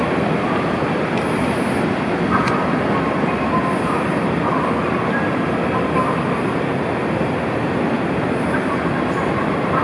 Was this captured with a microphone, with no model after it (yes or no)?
no